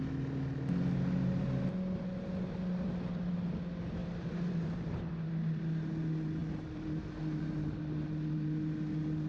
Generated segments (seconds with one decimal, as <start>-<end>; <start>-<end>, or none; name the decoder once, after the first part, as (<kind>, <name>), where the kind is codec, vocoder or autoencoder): 4.0-5.1 (vocoder, BigVGAN v2); 6.4-7.8